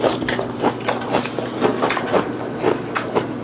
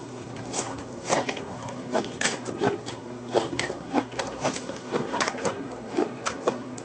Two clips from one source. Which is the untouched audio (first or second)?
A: first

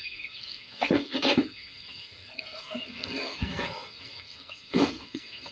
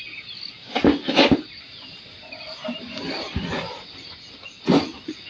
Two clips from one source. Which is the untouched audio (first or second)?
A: second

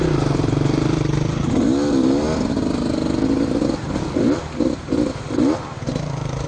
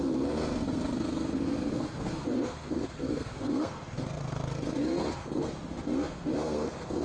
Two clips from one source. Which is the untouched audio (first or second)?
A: first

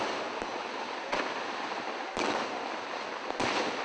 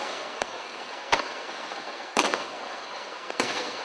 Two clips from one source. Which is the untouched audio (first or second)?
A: first